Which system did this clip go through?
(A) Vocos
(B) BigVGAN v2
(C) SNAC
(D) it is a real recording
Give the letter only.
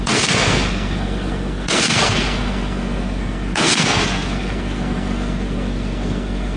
C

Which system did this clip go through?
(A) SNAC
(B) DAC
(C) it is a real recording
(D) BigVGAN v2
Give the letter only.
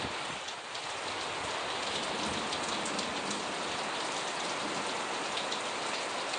C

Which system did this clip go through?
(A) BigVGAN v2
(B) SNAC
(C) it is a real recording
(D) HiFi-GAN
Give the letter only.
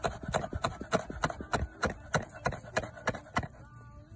C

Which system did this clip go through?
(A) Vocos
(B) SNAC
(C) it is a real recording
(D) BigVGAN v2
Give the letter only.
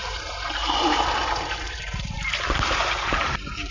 D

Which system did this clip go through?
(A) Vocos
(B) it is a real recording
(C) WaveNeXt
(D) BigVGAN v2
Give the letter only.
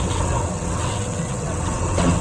C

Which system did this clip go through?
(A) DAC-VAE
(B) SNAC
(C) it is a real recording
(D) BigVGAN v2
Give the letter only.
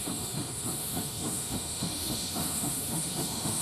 A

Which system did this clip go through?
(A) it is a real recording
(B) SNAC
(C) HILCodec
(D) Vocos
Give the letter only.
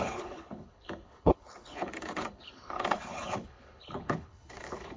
C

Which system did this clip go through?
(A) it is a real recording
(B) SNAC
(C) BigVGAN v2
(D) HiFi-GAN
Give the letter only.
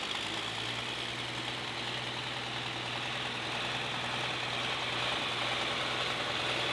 A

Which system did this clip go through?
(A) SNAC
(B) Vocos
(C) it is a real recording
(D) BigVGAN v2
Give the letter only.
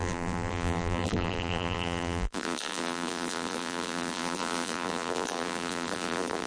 D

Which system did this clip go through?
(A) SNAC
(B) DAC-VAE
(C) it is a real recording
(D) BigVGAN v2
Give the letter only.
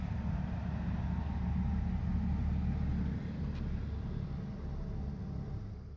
C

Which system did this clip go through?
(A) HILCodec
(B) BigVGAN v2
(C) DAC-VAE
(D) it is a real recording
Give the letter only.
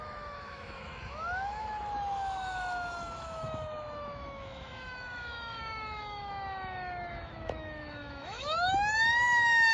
C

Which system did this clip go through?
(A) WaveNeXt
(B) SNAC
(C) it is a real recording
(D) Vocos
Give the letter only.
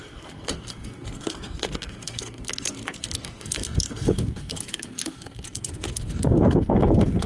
B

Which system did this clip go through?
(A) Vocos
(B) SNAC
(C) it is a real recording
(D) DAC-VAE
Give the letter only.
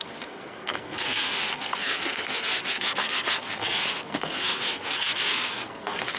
B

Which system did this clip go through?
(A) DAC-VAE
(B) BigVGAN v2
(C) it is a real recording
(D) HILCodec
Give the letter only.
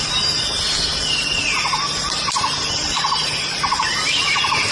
B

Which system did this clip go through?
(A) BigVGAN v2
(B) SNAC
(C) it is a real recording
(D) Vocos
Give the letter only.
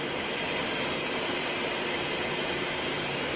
A